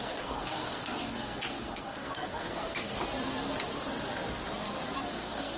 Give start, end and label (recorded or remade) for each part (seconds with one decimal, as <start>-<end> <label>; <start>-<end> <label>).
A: 0.0-3.0 remade; 3.0-5.1 recorded; 5.1-5.6 remade